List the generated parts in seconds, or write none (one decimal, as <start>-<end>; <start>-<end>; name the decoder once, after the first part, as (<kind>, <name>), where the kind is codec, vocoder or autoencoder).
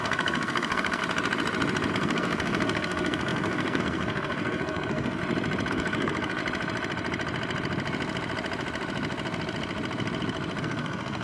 0.0-1.0 (codec, SNAC); 1.9-5.2; 5.7-6.4; 10.6-11.2